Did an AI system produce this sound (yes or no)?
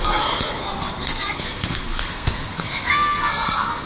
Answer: yes